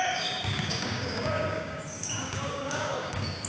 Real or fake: fake